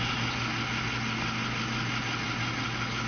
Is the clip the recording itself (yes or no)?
yes